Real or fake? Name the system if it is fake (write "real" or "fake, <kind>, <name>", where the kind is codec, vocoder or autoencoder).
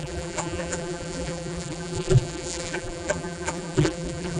fake, vocoder, BigVGAN v2